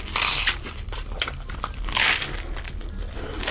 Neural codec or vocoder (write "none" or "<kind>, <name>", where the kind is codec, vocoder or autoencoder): none